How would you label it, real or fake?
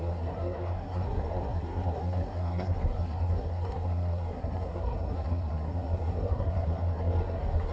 fake